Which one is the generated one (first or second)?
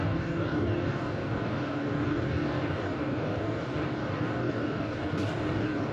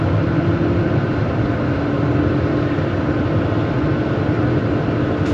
first